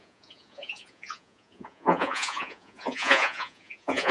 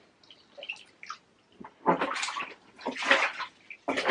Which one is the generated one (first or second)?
first